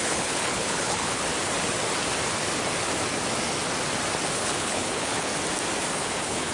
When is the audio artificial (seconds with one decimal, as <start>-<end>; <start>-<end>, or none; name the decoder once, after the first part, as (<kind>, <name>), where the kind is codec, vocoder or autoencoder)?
0.0-1.3 (codec, HILCodec); 4.4-5.3; 5.9-6.5